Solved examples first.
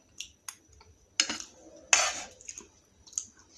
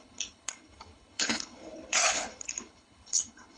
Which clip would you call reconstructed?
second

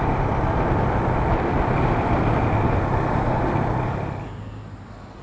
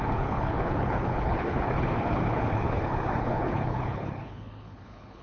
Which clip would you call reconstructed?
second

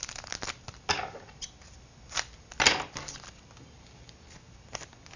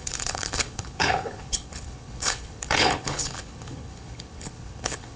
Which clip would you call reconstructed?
second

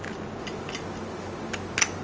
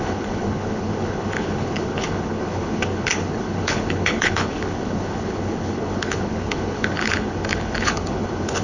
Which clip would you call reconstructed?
second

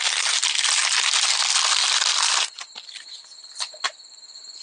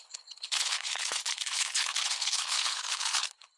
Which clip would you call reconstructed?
second